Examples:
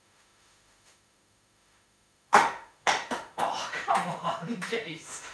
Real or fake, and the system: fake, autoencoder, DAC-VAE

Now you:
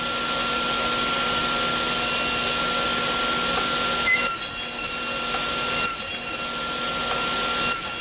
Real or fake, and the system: real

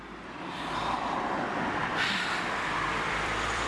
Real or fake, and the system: fake, vocoder, BigVGAN v2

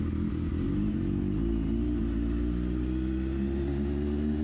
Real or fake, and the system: real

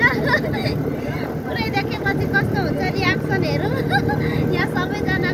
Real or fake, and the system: real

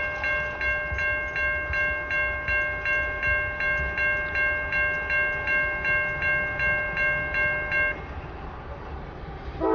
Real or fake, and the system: real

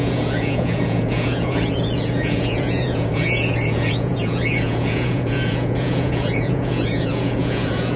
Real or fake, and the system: fake, vocoder, Vocos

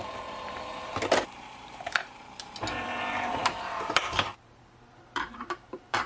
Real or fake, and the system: fake, vocoder, BigVGAN v2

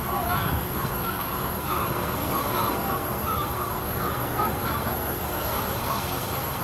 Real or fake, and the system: fake, codec, SNAC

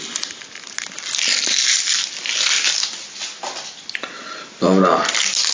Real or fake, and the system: real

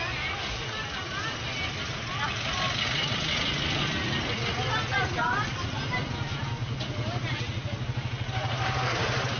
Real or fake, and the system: real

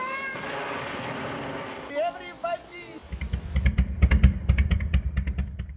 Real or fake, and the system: real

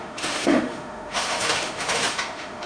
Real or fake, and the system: fake, autoencoder, DAC-VAE